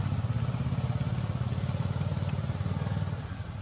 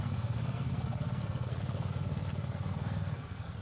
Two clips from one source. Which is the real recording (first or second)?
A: first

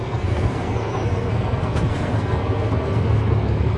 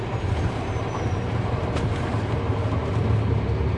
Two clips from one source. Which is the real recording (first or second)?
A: second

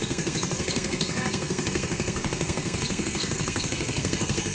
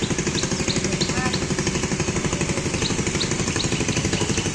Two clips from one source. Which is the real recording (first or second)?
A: second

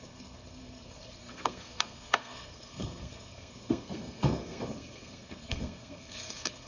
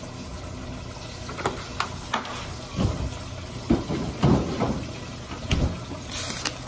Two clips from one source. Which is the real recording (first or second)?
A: second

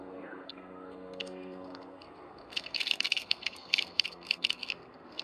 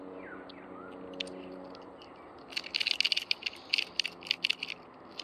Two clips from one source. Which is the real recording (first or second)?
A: second